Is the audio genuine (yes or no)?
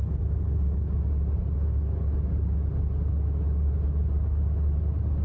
yes